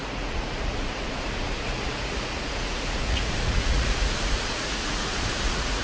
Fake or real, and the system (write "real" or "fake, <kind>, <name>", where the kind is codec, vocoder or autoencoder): fake, vocoder, Vocos